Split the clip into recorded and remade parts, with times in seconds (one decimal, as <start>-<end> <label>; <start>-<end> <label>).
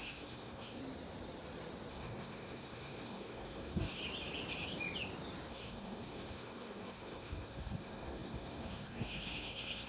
0.0-0.8 remade; 0.8-1.9 recorded; 1.9-4.0 remade; 4.0-5.5 recorded; 5.5-9.9 remade